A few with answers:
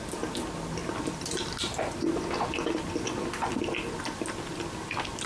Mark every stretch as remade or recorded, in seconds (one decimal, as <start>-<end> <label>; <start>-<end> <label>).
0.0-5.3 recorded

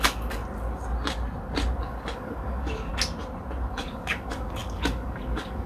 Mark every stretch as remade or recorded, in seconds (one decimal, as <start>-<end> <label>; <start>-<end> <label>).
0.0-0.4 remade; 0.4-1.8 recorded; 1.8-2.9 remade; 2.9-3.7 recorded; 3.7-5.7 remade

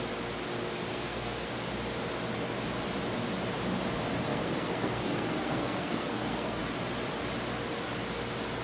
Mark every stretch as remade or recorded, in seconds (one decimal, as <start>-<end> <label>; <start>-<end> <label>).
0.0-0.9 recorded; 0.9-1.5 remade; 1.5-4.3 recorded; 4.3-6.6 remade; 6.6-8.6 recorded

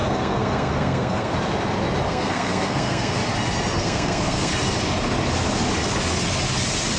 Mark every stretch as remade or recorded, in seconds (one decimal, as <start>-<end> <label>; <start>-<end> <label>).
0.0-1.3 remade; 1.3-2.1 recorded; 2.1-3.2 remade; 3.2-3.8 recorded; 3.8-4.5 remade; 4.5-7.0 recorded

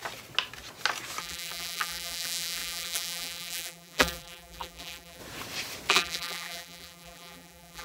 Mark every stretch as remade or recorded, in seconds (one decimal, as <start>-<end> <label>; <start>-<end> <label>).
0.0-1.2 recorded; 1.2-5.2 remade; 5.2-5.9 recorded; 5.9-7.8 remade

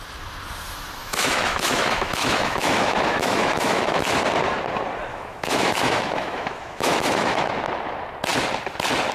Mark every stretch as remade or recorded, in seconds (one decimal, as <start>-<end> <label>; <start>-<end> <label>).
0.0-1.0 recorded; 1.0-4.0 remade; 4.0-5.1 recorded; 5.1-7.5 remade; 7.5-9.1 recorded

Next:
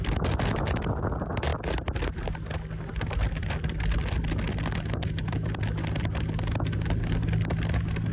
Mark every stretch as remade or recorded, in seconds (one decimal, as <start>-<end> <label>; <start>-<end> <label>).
0.0-8.1 recorded

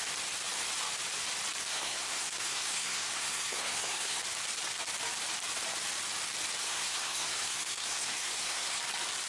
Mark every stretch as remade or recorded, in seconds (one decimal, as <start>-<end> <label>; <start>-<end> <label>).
0.0-1.7 recorded; 1.7-4.2 remade; 4.2-6.6 recorded; 6.6-8.8 remade; 8.8-9.3 recorded